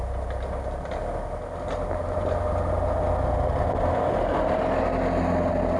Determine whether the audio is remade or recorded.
recorded